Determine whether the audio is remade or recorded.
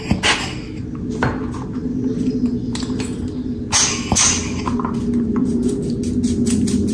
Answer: recorded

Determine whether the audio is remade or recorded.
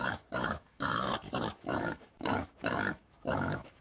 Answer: remade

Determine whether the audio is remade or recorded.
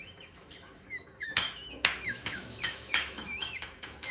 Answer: remade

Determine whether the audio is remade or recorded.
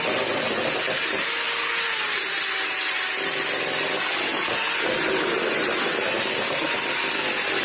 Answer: recorded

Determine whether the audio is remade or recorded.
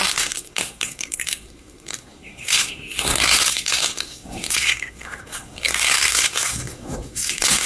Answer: remade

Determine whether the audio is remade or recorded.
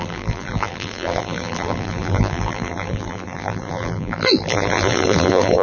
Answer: remade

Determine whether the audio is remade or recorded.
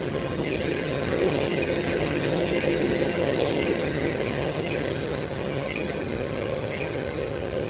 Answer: remade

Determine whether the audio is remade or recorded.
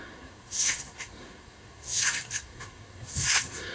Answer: remade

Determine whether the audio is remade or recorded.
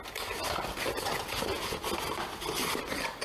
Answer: recorded